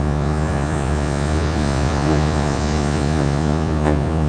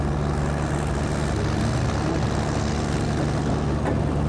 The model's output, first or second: first